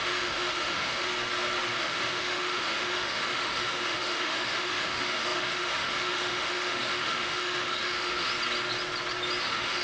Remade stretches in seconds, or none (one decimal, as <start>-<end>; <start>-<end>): 0.0-1.1; 1.8-8.3; 9.4-9.8